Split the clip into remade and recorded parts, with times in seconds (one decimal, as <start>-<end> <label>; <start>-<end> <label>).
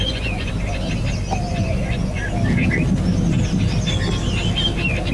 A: 0.0-0.5 remade; 0.5-1.5 recorded; 1.5-2.2 remade; 2.2-5.1 recorded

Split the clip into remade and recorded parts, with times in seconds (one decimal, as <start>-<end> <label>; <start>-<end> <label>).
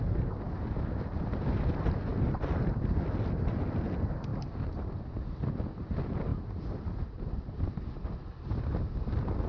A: 0.0-2.1 recorded; 2.1-2.7 remade; 2.7-6.3 recorded; 6.3-7.7 remade; 7.7-9.5 recorded